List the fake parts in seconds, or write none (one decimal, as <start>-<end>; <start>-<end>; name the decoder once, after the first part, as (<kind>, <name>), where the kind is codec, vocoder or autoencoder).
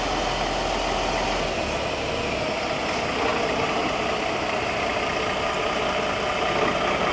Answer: none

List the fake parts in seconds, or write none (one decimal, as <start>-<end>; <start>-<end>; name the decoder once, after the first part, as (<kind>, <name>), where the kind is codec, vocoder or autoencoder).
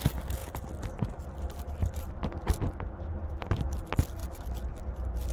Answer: none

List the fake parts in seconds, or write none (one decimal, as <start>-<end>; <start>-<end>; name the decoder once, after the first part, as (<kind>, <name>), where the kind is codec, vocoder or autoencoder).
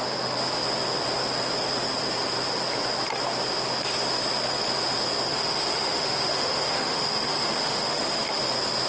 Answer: 5.3-8.4 (autoencoder, DAC-VAE)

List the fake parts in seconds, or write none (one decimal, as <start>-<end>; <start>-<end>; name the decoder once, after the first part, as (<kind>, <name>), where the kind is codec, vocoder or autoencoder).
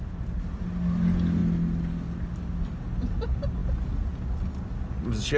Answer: none